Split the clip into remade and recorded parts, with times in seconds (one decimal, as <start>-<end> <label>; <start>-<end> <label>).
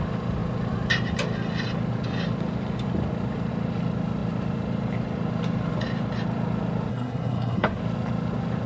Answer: 0.0-6.9 recorded; 6.9-7.8 remade; 7.8-8.7 recorded